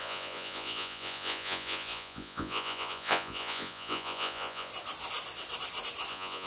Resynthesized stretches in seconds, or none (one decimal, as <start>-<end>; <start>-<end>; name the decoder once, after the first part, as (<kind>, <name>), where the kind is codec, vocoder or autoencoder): 0.0-4.7 (vocoder, Vocos); 6.1-6.5